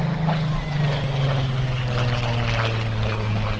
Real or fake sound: real